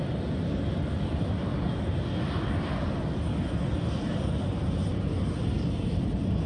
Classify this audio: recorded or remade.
recorded